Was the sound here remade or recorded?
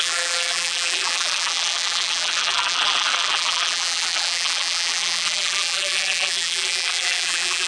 remade